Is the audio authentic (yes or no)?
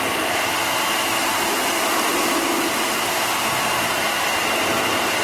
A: yes